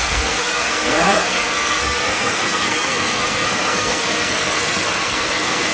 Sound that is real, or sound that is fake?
fake